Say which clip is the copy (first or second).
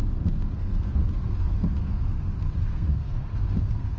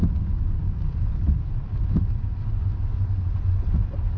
first